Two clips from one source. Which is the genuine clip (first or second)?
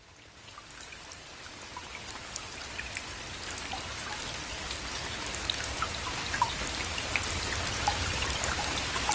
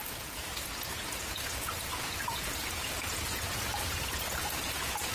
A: first